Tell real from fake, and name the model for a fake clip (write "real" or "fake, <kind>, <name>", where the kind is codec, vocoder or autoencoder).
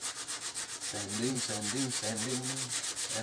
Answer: fake, vocoder, BigVGAN v2